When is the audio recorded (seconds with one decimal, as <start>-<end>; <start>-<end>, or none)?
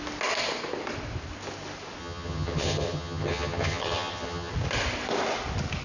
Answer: 0.0-2.0; 4.5-5.8